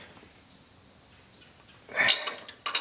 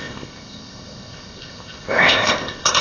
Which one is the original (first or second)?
first